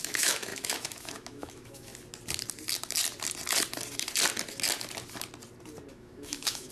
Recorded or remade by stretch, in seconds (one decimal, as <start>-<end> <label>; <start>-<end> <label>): 0.0-1.9 remade; 1.9-5.9 recorded; 5.9-6.7 remade